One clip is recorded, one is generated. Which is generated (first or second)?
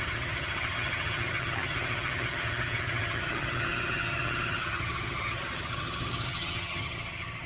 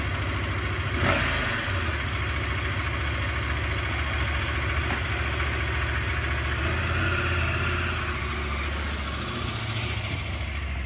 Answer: first